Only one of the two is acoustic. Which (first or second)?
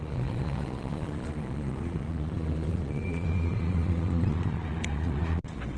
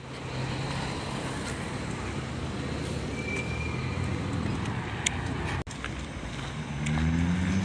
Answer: second